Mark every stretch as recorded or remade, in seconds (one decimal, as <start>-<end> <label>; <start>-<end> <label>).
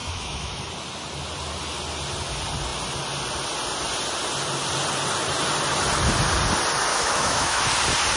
0.0-0.6 remade; 0.6-6.9 recorded; 6.9-7.6 remade; 7.6-8.2 recorded